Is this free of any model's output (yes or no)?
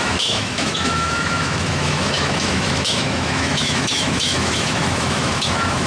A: no